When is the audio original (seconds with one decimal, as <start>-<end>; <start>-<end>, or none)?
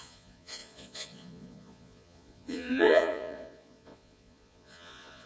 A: none